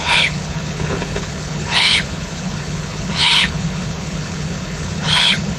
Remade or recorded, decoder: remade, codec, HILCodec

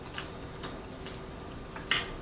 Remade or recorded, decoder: recorded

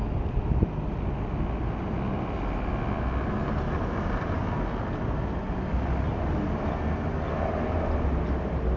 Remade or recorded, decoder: recorded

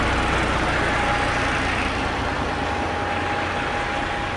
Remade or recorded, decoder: recorded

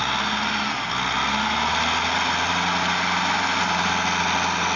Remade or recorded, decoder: recorded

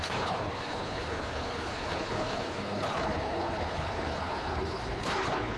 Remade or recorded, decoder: remade, codec, HILCodec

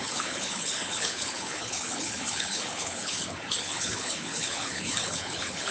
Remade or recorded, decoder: remade, codec, HILCodec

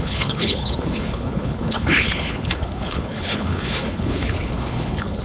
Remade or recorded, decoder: remade, codec, HILCodec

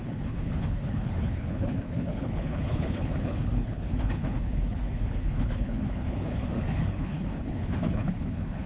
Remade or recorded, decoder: remade, codec, HILCodec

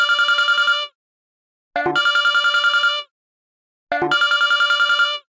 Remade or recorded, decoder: recorded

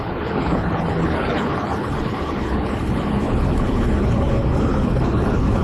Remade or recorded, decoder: remade, codec, HILCodec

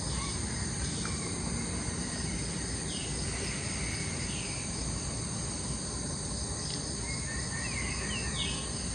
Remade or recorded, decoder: recorded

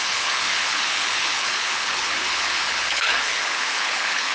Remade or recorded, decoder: remade, codec, HILCodec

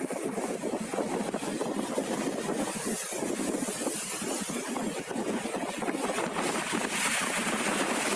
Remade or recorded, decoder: recorded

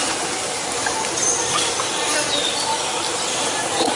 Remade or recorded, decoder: recorded